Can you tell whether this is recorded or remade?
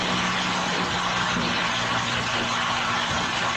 recorded